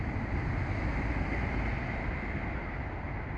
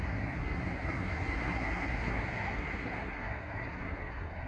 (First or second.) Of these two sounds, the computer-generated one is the second